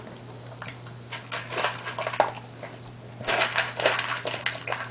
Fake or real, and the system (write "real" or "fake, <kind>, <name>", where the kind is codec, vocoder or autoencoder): real